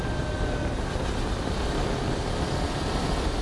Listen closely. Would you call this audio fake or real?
real